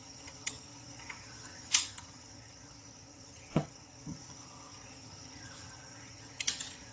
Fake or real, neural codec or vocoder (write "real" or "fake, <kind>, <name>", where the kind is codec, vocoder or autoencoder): fake, vocoder, HiFi-GAN